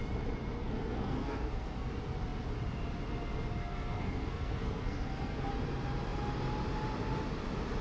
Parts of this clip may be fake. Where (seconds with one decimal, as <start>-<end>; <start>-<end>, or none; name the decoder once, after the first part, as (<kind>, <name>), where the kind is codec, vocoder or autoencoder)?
0.6-1.9 (codec, SNAC); 3.6-5.5